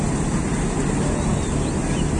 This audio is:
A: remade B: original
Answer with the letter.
B